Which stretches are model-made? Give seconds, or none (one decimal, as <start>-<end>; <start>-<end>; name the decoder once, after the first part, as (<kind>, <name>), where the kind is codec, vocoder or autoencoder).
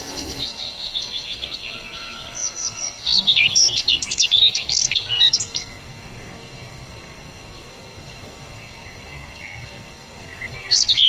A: 0.0-11.1 (codec, SNAC)